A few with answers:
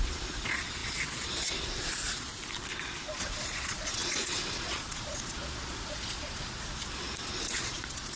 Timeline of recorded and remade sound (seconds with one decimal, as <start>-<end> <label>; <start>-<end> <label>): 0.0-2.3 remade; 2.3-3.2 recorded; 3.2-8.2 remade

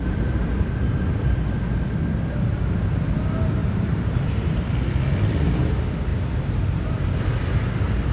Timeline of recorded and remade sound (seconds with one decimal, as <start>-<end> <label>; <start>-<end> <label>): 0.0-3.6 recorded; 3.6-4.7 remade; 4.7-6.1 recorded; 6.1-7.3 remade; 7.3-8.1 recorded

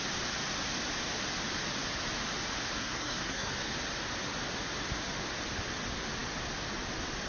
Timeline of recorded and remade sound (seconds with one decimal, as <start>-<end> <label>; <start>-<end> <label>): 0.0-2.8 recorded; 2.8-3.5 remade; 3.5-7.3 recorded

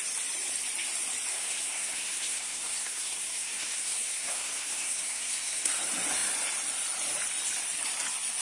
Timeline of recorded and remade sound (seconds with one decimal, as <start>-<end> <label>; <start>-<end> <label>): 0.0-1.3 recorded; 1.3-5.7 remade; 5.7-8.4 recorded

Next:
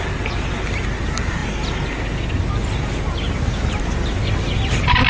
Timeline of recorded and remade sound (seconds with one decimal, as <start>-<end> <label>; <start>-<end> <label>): 0.0-5.1 recorded

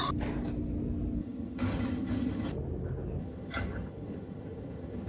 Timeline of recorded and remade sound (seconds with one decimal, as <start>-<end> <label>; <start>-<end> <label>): 0.0-1.2 recorded; 1.2-2.5 remade; 2.5-3.2 recorded; 3.2-5.1 remade